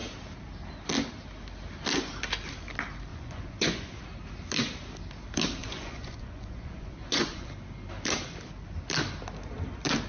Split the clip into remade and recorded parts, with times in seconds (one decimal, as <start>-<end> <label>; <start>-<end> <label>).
0.0-3.1 recorded; 3.1-4.0 remade; 4.0-5.6 recorded; 5.6-7.5 remade; 7.5-10.1 recorded